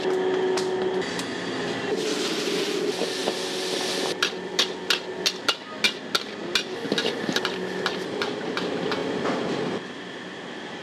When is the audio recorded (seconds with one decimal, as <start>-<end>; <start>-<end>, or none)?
0.0-10.8